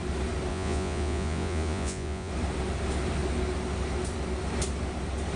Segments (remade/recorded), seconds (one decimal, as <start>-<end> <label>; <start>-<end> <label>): 0.0-0.5 recorded; 0.5-2.3 remade; 2.3-5.4 recorded